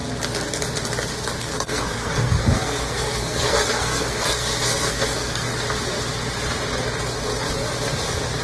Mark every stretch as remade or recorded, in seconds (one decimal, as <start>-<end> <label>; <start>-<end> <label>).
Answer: 0.0-1.4 recorded; 1.4-5.5 remade; 5.5-8.4 recorded